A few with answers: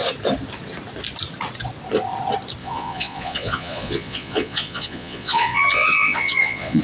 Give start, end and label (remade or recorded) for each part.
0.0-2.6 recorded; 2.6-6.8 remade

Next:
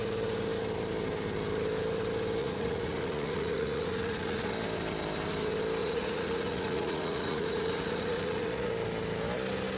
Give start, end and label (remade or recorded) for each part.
0.0-2.4 recorded; 2.4-4.5 remade; 4.5-5.8 recorded; 5.8-8.7 remade; 8.7-9.8 recorded

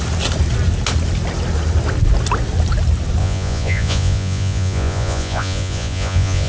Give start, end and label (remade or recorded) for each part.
0.0-3.2 recorded; 3.2-6.5 remade

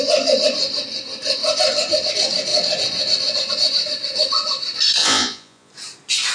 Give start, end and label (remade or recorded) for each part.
0.0-5.0 recorded; 5.0-5.7 remade; 5.7-6.3 recorded

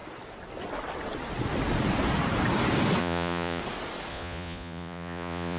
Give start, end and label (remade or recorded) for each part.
0.0-3.0 recorded; 3.0-3.6 remade; 3.6-4.1 recorded; 4.1-5.6 remade